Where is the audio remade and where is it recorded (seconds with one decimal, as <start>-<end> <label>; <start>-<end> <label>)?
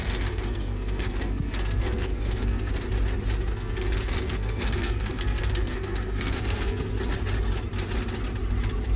0.0-2.7 remade; 2.7-3.5 recorded; 3.5-6.9 remade; 6.9-9.0 recorded